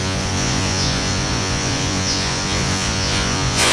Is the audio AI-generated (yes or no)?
yes